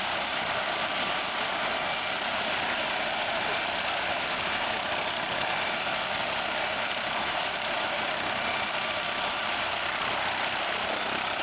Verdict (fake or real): fake